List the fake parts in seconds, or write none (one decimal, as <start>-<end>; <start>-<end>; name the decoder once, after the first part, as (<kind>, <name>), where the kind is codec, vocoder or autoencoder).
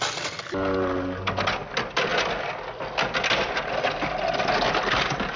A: none